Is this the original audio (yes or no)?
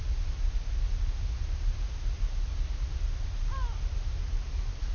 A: yes